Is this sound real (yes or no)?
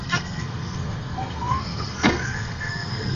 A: no